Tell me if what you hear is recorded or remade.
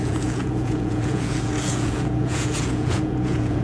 remade